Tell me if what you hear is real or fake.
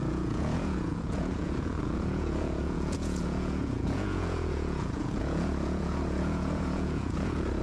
fake